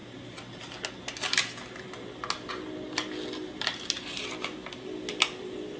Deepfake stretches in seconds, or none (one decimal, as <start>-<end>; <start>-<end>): none